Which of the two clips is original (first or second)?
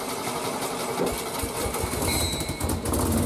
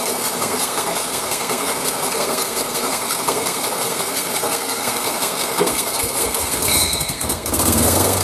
first